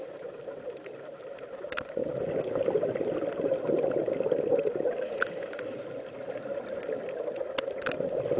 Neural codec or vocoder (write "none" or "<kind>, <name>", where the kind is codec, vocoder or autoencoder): none